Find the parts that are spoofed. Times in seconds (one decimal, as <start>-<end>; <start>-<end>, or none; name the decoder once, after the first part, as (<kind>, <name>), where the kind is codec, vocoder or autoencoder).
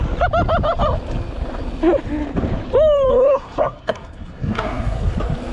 3.1-5.1 (codec, SNAC)